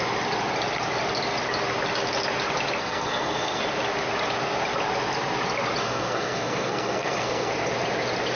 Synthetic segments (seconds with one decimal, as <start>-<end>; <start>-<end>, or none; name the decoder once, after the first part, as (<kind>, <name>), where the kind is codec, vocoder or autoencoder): 2.8-3.6 (codec, SNAC); 5.8-7.5